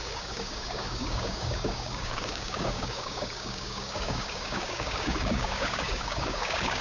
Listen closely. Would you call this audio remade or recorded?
remade